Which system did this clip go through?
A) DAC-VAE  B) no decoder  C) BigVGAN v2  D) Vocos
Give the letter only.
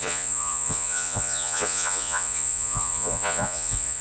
D